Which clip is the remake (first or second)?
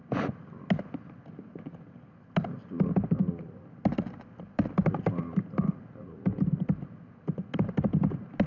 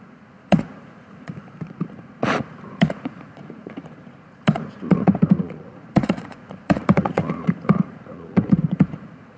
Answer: second